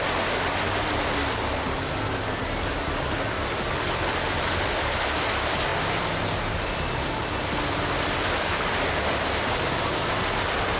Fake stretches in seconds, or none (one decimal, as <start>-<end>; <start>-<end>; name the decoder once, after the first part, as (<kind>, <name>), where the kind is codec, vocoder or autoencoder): none